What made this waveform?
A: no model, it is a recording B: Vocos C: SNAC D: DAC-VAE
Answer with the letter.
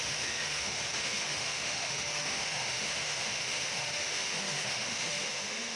D